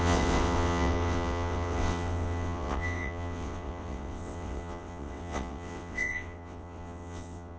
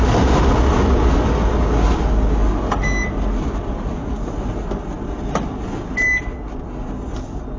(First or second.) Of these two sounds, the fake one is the first